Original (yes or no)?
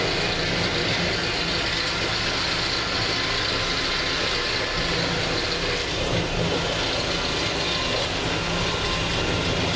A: yes